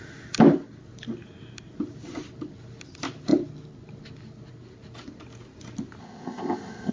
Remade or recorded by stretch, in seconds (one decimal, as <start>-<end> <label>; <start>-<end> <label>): 0.0-6.0 recorded; 6.0-6.9 remade